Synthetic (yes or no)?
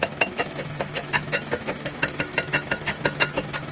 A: yes